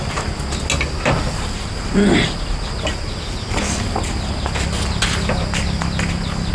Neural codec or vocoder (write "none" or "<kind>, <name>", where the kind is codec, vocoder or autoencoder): none